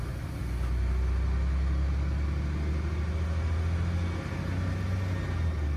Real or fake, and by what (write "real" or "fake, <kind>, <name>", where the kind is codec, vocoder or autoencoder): real